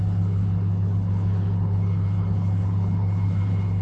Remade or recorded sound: remade